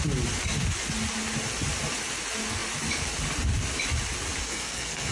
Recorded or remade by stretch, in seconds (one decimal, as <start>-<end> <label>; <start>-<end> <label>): 0.0-4.4 recorded; 4.4-5.1 remade